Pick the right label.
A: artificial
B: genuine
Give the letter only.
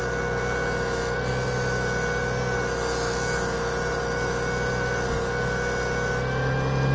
B